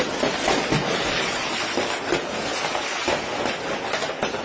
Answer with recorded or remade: recorded